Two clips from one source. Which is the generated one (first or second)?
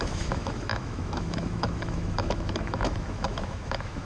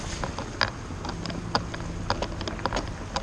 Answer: first